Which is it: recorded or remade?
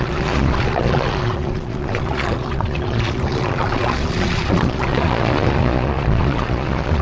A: remade